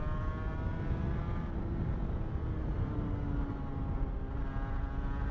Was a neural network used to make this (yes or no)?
no